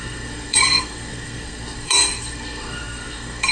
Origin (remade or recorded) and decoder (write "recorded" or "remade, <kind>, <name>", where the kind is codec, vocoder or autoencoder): remade, codec, SNAC